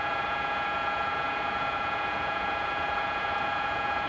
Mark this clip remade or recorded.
remade